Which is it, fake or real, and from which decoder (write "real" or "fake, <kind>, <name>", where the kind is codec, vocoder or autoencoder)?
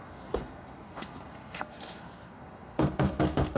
fake, codec, SNAC